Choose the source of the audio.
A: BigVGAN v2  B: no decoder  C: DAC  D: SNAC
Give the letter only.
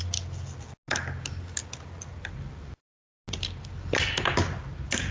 B